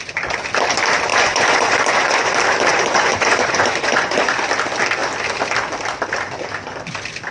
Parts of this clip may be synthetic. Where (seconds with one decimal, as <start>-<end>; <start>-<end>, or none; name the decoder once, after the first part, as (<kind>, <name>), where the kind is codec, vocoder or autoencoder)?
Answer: 1.1-2.3 (vocoder, Vocos); 2.7-4.4